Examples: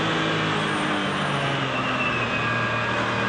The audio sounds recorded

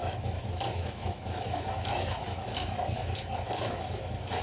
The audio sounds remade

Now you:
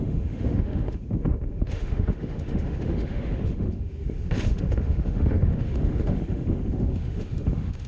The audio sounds remade